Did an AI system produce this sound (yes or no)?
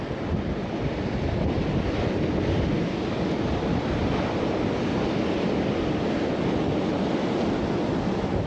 no